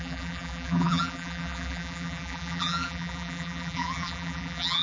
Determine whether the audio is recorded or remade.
remade